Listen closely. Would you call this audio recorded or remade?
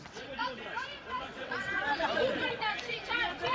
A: remade